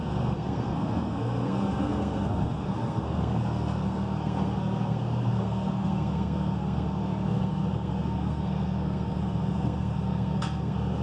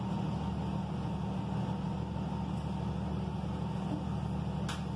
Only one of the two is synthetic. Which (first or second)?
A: first